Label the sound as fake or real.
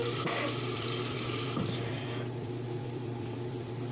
fake